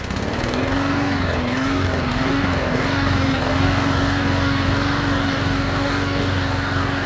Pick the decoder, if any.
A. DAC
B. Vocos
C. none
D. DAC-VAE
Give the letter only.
A